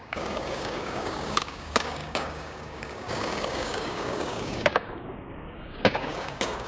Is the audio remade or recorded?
remade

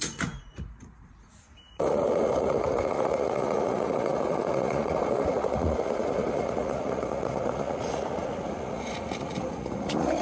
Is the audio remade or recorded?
remade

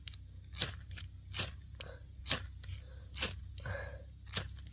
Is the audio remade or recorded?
recorded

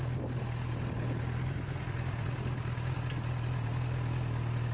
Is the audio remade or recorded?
recorded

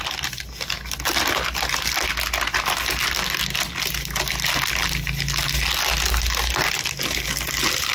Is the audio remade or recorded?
recorded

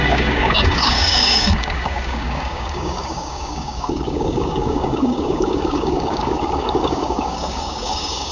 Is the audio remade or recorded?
remade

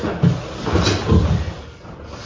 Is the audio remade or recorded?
recorded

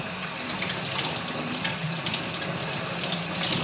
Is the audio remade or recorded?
recorded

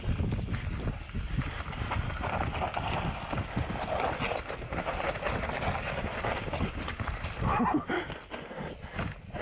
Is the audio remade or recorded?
recorded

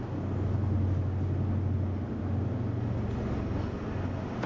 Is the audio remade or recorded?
recorded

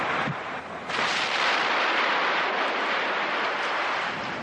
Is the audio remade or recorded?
remade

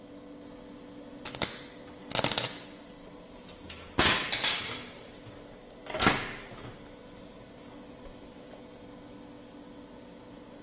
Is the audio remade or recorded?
recorded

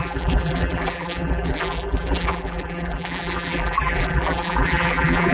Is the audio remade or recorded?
remade